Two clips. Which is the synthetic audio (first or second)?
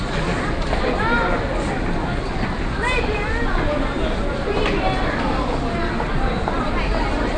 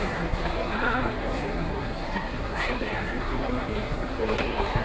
second